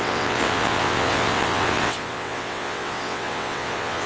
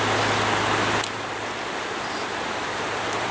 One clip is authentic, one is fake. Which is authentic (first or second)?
second